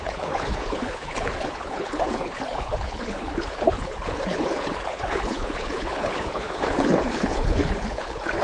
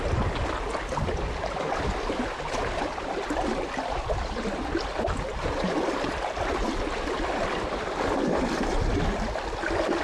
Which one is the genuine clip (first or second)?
second